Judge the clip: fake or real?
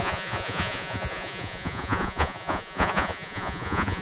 fake